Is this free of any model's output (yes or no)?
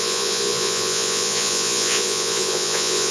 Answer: no